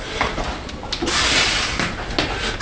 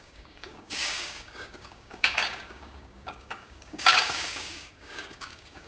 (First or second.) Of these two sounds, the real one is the first